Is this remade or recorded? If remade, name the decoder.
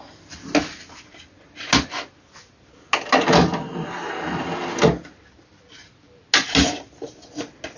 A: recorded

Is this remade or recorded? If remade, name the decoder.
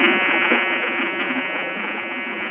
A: remade, vocoder, Vocos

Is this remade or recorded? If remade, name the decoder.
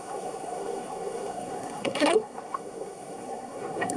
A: remade, codec, SNAC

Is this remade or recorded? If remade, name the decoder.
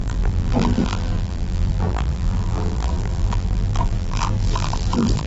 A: remade, vocoder, BigVGAN v2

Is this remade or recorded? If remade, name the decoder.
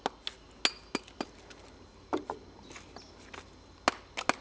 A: recorded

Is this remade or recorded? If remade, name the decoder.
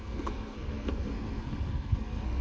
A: remade, codec, SNAC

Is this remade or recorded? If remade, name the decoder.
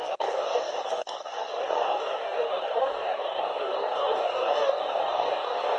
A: remade, codec, DAC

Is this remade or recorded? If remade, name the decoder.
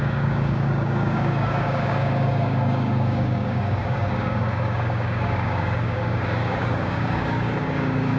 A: remade, codec, DAC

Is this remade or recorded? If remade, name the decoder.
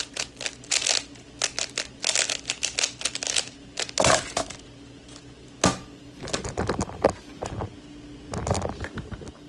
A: recorded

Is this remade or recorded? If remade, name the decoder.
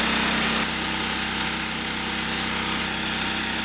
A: recorded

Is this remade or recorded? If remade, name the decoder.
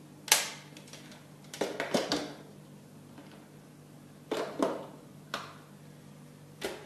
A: recorded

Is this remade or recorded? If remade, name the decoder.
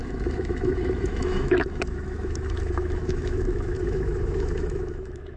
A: remade, autoencoder, DAC-VAE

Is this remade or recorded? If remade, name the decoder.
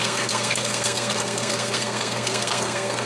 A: remade, codec, SNAC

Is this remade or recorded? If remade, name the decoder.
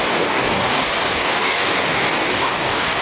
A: remade, codec, DAC